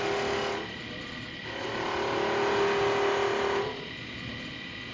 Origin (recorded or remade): recorded